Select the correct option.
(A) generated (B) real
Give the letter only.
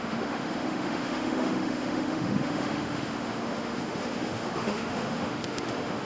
A